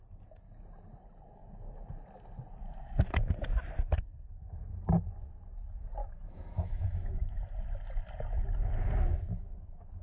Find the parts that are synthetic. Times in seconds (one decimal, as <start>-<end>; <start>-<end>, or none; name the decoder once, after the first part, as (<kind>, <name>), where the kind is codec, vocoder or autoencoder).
6.0-7.4 (autoencoder, DAC-VAE)